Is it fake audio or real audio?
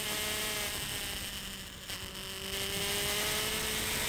real